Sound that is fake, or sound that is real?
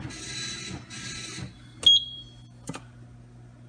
real